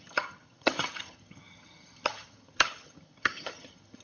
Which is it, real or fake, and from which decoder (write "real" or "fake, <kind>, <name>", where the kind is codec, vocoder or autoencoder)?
fake, vocoder, HiFi-GAN